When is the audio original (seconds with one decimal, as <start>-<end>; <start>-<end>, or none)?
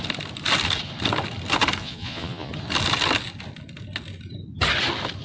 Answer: 0.0-1.8; 2.5-5.2